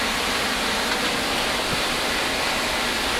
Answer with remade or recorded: recorded